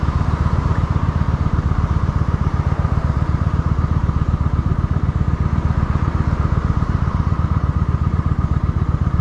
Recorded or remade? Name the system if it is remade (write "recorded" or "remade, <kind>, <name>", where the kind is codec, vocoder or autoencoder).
remade, vocoder, BigVGAN v2